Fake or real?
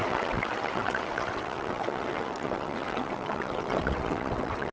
fake